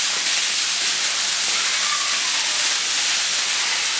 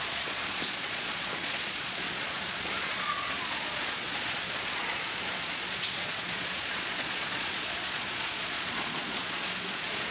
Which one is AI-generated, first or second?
second